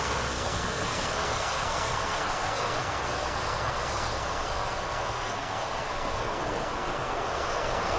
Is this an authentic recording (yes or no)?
no